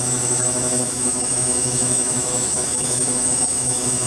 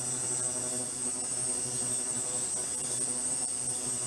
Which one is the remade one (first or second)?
first